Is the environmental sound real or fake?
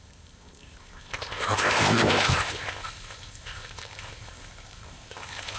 fake